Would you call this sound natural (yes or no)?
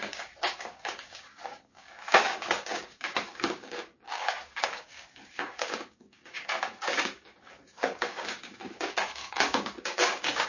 no